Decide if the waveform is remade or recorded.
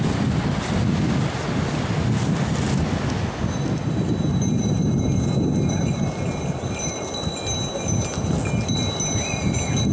recorded